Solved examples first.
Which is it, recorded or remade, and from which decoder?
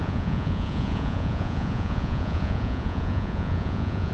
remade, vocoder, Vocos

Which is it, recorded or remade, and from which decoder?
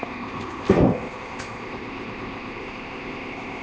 remade, codec, ZipCodec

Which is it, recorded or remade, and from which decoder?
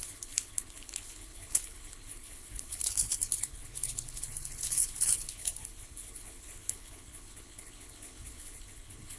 remade, codec, HILCodec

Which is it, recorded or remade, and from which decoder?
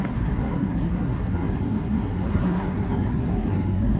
remade, codec, SNAC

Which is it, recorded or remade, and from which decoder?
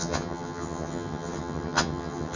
remade, vocoder, HiFi-GAN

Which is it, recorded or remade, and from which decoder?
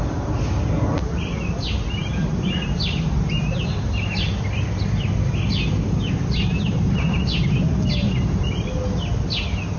recorded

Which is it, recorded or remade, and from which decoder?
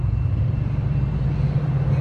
recorded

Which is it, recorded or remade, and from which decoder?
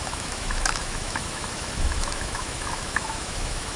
remade, autoencoder, DAC-VAE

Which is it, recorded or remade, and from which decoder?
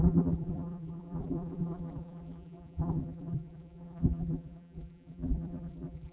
remade, vocoder, BigVGAN v2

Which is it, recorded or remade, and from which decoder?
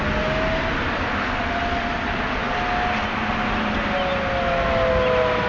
recorded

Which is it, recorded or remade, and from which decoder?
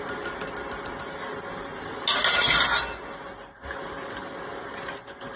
recorded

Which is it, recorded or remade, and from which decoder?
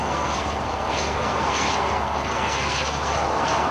remade, codec, SNAC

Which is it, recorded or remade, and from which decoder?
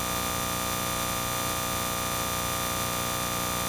recorded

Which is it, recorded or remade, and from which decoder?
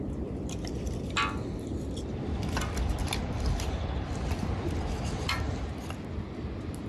recorded